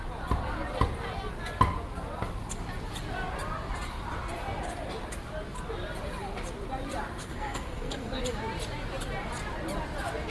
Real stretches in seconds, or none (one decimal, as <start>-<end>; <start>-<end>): 0.0-7.2; 8.2-10.3

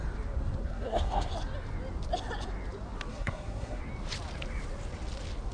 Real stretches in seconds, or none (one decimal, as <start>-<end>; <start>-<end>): 0.0-0.6; 1.3-3.1; 3.8-5.5

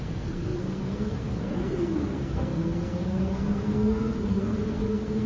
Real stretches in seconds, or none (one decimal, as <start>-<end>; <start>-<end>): none